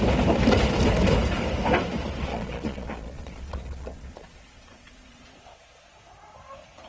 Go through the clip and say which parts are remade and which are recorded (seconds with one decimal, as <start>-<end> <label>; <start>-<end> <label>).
0.0-2.3 recorded; 2.3-5.9 remade; 5.9-6.9 recorded